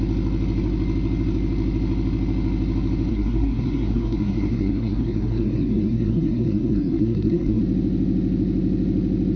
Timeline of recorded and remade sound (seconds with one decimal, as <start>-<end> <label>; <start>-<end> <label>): 0.0-3.1 recorded; 3.1-7.6 remade; 7.6-9.4 recorded

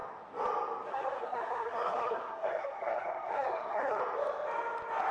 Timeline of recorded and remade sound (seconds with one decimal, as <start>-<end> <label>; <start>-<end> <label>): 0.0-0.9 recorded; 0.9-4.0 remade; 4.0-5.1 recorded

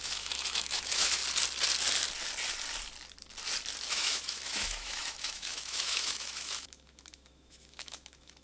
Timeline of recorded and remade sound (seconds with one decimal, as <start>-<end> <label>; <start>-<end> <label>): 0.0-1.2 remade; 1.2-3.9 recorded; 3.9-8.4 remade

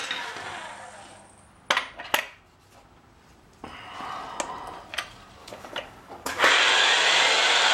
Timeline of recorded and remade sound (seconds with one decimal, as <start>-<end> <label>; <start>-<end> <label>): 0.0-5.4 recorded; 5.4-6.5 remade; 6.5-7.7 recorded

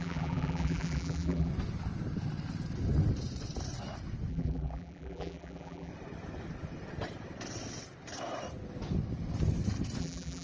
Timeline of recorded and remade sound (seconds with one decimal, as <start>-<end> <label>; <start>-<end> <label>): 0.0-1.5 remade; 1.5-4.3 recorded; 4.3-5.9 remade; 5.9-10.0 recorded; 10.0-10.4 remade

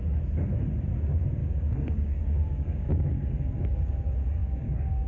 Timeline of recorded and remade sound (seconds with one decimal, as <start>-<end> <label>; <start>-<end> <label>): 0.0-1.4 recorded; 1.4-4.0 remade; 4.0-4.4 recorded; 4.4-5.1 remade

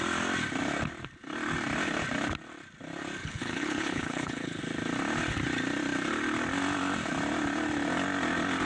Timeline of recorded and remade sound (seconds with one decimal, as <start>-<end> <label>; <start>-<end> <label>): 0.0-3.2 recorded; 3.2-4.6 remade; 4.6-8.7 recorded